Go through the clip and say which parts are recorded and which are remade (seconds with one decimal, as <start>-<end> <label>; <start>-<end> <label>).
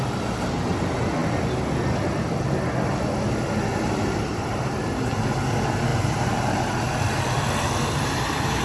0.0-3.7 recorded; 3.7-5.1 remade; 5.1-5.9 recorded; 5.9-6.9 remade; 6.9-8.6 recorded